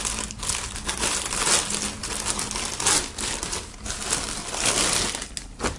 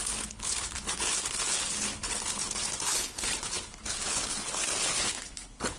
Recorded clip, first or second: first